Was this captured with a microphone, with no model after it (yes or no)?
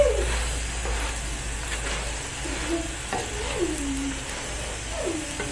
yes